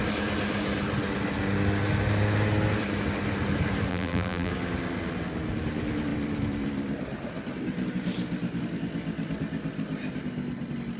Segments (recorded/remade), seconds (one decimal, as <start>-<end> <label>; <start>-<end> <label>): 0.0-3.9 recorded; 3.9-4.5 remade; 4.5-11.0 recorded